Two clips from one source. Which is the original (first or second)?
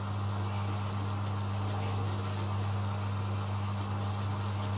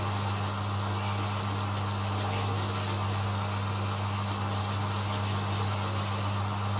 second